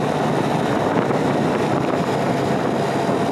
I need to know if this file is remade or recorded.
recorded